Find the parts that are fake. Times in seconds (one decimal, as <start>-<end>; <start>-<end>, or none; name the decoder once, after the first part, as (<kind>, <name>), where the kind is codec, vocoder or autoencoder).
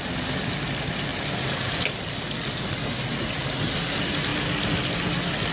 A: none